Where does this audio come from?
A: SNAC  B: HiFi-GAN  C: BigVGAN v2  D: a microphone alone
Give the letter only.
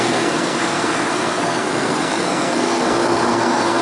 A